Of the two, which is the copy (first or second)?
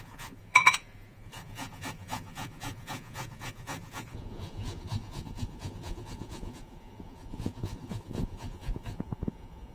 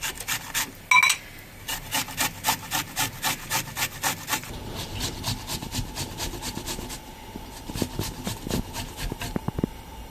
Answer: first